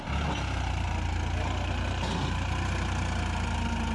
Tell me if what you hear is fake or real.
real